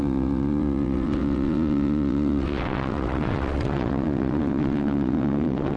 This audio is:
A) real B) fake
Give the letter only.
B